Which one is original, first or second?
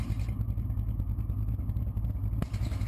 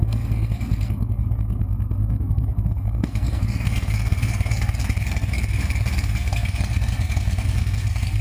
first